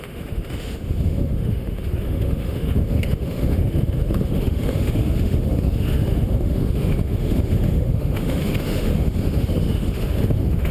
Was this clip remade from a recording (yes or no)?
yes